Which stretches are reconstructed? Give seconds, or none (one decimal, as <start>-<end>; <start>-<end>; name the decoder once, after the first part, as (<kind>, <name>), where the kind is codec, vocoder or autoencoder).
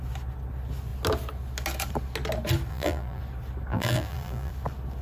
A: 2.7-3.2 (vocoder, BigVGAN v2); 3.7-4.5